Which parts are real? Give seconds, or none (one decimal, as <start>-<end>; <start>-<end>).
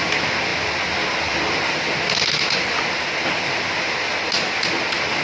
0.0-5.2